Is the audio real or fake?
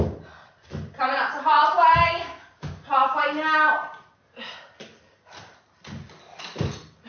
real